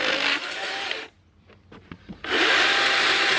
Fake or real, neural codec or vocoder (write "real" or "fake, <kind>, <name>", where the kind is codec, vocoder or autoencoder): real